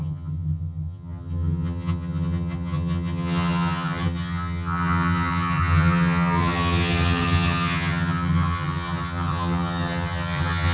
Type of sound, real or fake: fake